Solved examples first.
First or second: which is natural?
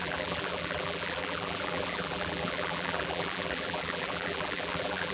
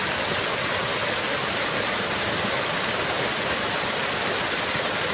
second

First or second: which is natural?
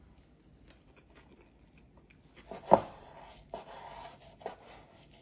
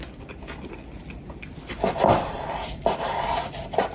first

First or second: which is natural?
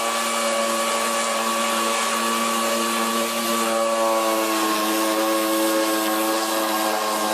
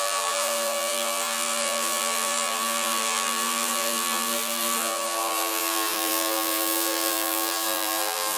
first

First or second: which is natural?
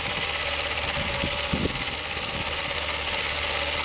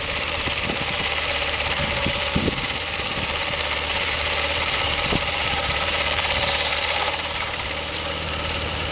first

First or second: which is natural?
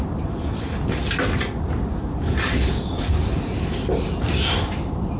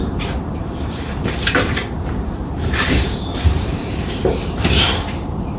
first